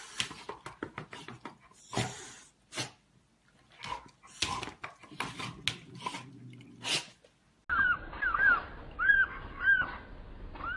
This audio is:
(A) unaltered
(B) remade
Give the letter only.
A